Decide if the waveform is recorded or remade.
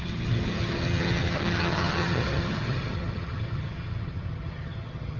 remade